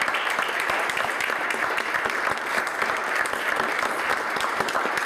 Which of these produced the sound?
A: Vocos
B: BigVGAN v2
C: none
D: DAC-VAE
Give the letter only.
C